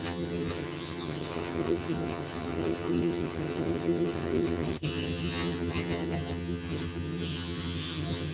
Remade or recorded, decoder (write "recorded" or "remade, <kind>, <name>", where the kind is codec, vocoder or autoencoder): remade, vocoder, HiFi-GAN